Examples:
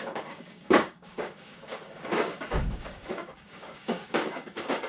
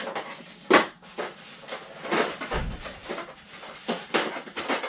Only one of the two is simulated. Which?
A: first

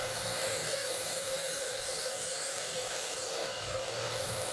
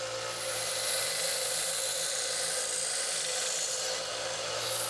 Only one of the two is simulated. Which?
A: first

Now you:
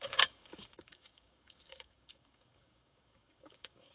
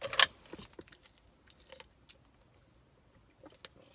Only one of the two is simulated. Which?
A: first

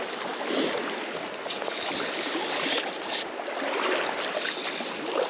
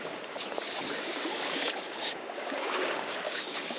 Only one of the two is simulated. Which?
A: second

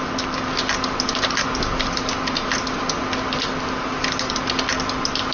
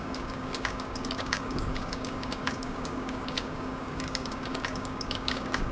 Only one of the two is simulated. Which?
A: second